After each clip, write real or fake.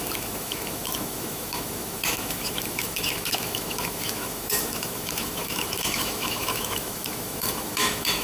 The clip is fake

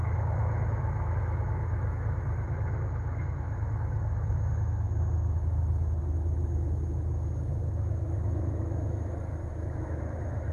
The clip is fake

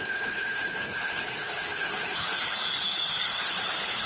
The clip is fake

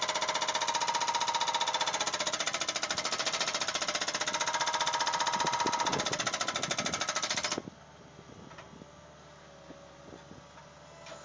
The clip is real